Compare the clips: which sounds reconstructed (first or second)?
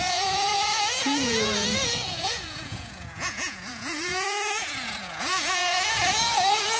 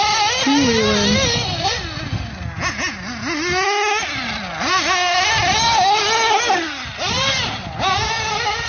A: first